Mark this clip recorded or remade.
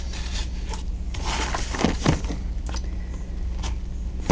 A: recorded